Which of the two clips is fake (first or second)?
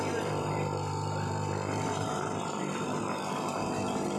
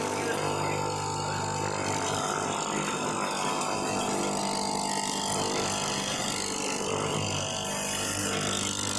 first